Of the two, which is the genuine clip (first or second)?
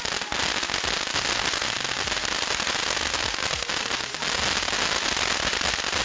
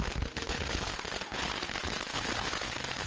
first